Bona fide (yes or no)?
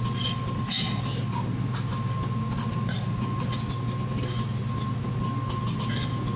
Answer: yes